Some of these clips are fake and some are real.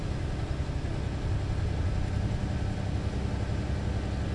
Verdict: real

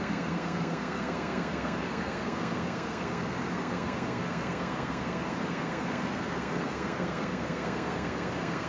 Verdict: fake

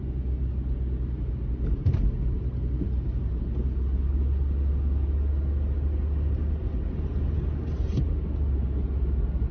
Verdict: real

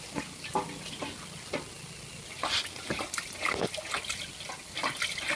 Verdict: real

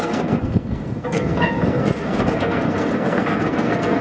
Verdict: fake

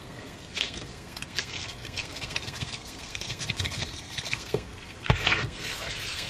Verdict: fake